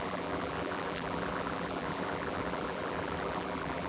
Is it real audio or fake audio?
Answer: fake